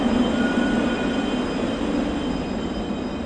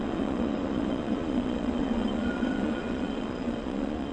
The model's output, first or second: second